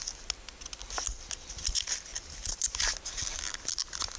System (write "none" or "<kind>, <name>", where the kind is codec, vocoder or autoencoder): none